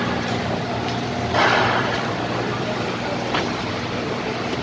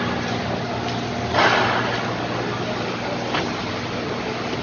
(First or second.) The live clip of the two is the second